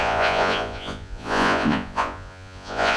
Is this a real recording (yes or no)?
no